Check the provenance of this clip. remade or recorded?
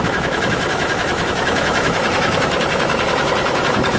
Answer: remade